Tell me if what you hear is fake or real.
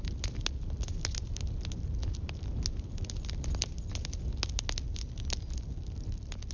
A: real